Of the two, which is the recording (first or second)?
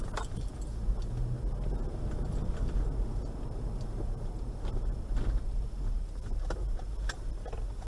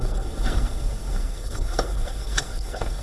first